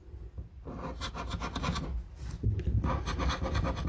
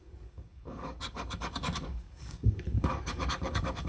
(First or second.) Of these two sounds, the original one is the first